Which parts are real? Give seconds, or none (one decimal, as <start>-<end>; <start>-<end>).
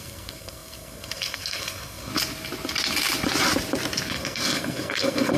2.1-4.1